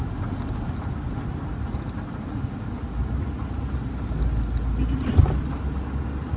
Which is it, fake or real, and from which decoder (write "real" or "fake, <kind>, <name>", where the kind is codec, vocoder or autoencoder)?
real